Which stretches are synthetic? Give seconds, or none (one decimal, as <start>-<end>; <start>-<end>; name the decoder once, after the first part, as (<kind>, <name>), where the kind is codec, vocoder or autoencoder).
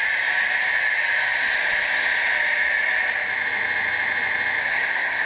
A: 4.6-5.3 (codec, SNAC)